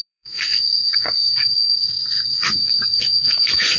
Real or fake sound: fake